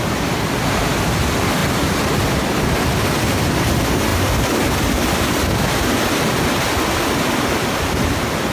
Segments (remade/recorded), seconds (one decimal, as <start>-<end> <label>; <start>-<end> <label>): 0.0-8.5 recorded

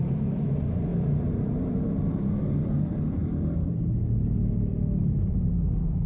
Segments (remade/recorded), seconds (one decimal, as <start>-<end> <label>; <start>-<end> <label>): 0.0-6.1 remade

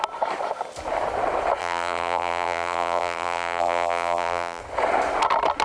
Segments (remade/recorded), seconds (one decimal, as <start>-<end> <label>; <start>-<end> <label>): 0.0-1.6 recorded; 1.6-4.6 remade; 4.6-5.6 recorded

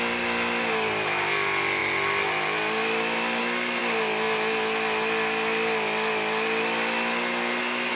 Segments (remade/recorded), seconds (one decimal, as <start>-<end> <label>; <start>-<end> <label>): 0.0-7.9 recorded

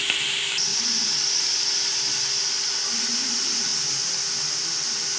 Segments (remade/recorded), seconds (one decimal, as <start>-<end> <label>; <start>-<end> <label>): 0.0-0.7 remade; 0.7-1.3 recorded; 1.3-3.7 remade; 3.7-5.2 recorded

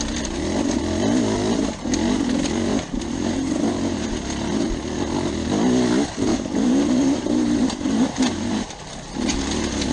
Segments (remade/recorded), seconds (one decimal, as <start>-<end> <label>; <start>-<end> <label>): 0.0-2.7 recorded; 2.7-4.1 remade; 4.1-6.3 recorded; 6.3-8.9 remade; 8.9-9.9 recorded

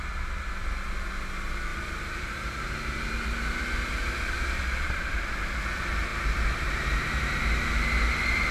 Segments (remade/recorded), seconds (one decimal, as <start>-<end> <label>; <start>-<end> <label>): 0.0-1.7 recorded; 1.7-4.2 remade; 4.2-8.5 recorded

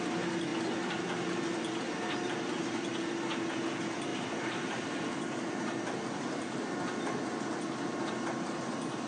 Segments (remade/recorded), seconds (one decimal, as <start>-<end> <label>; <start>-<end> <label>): 0.0-0.5 recorded; 0.5-3.6 remade; 3.6-4.1 recorded; 4.1-5.1 remade; 5.1-9.1 recorded